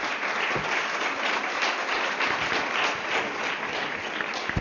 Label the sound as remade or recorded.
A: recorded